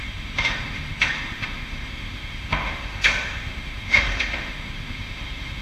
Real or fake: fake